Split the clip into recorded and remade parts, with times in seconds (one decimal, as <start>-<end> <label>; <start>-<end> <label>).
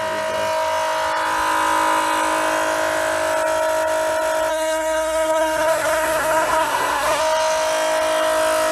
0.0-4.5 recorded; 4.5-7.2 remade; 7.2-8.7 recorded